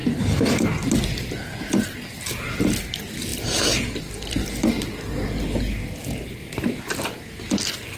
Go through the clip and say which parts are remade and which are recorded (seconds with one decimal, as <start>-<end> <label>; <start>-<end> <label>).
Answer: 0.0-1.9 remade; 1.9-6.4 recorded; 6.4-6.9 remade; 6.9-8.0 recorded